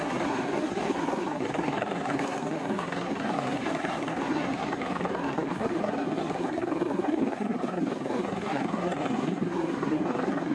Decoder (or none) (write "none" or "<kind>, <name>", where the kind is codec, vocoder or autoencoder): codec, SNAC